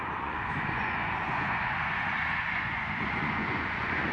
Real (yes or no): no